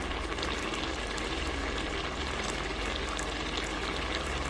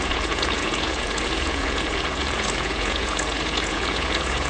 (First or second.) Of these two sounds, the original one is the first